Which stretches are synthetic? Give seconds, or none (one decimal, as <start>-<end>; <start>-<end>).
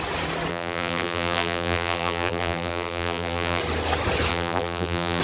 0.5-3.6; 4.3-5.2